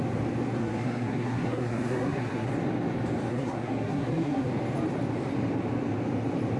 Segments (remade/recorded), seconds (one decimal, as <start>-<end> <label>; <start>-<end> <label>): 0.0-0.6 recorded; 0.6-2.5 remade; 2.5-3.3 recorded; 3.3-4.5 remade; 4.5-6.6 recorded